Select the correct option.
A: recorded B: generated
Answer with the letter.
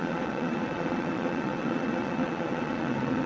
B